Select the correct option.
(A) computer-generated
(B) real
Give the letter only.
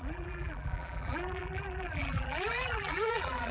A